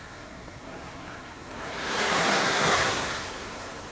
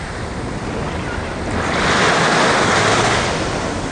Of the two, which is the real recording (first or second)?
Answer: second